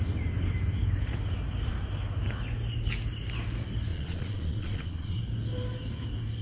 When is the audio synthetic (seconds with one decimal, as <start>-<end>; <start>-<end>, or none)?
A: 3.9-5.2